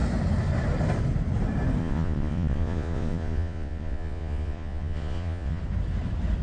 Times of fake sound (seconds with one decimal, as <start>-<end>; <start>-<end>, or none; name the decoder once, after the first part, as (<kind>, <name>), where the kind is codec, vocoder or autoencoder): 1.8-5.6 (vocoder, Vocos)